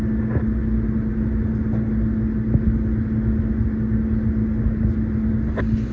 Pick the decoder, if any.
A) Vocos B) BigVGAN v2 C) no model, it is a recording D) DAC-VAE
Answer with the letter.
C